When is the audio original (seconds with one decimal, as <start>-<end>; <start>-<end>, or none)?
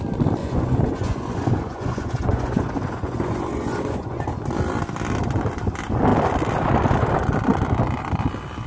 0.0-0.4; 4.3-8.7